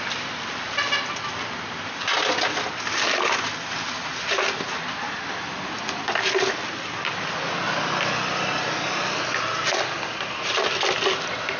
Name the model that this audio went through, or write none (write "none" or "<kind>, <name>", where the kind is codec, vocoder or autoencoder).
none